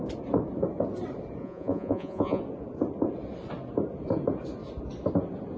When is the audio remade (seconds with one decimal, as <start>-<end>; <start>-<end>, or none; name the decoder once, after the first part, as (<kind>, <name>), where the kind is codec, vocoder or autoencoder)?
1.4-2.4 (vocoder, Vocos)